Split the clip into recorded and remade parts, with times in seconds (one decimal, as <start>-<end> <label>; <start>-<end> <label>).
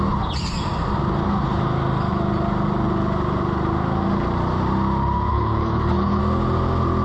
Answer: 0.0-5.3 recorded; 5.3-6.2 remade; 6.2-7.0 recorded